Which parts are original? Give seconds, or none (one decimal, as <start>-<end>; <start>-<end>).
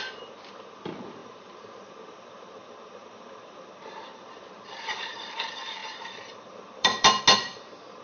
0.0-1.2; 5.3-5.8; 7.2-8.0